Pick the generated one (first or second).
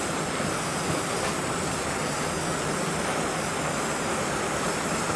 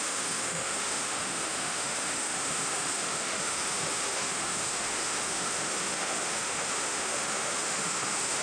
second